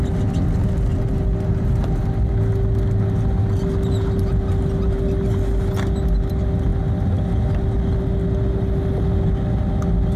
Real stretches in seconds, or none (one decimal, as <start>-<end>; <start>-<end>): 0.0-10.2